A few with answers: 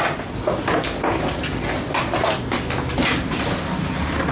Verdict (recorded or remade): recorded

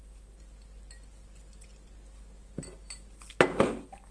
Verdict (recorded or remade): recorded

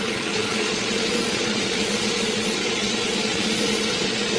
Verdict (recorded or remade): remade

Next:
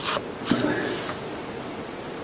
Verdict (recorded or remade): recorded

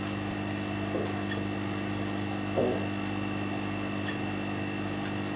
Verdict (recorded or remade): recorded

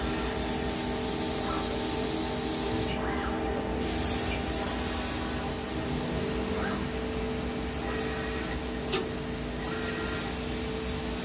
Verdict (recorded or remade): recorded